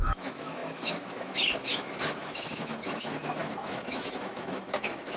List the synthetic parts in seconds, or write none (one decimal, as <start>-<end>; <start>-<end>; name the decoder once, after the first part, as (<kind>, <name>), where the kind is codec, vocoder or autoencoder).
0.0-5.2 (autoencoder, DAC-VAE)